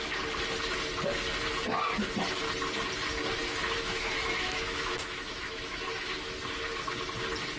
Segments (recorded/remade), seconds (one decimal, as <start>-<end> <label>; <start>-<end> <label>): 0.0-3.4 recorded; 3.4-6.9 remade; 6.9-7.6 recorded

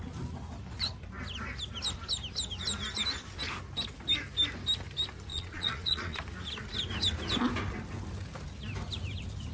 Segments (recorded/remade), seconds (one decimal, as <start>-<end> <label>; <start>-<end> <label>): 0.0-5.3 recorded; 5.3-6.2 remade; 6.2-9.5 recorded

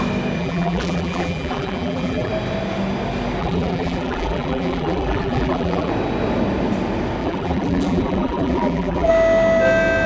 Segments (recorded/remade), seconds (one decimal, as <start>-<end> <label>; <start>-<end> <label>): 0.0-0.4 recorded; 0.4-2.3 remade; 2.3-3.4 recorded; 3.4-5.9 remade; 5.9-7.2 recorded; 7.2-9.1 remade; 9.1-10.1 recorded